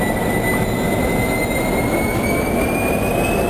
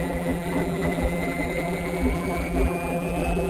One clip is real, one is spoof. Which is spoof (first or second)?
second